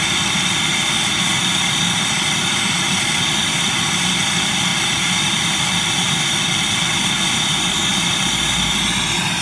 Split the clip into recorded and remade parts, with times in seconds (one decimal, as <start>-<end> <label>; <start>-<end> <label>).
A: 0.0-1.2 recorded; 1.2-4.7 remade; 4.7-5.4 recorded; 5.4-9.4 remade